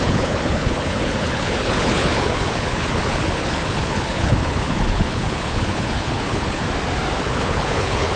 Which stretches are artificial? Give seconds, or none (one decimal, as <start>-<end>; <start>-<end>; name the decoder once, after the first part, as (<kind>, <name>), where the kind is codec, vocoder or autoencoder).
0.0-6.6 (codec, HILCodec); 7.2-8.2